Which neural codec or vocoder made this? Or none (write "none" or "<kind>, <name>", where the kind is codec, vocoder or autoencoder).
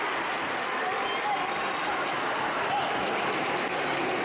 none